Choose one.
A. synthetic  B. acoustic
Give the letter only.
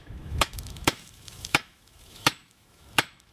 A